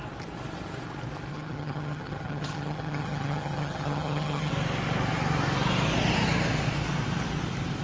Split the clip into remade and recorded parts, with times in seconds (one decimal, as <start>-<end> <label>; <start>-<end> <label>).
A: 0.0-1.3 recorded; 1.3-4.5 remade; 4.5-7.8 recorded